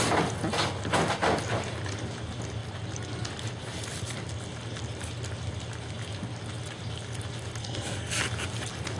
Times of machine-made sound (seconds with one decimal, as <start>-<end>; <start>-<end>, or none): 7.6-8.2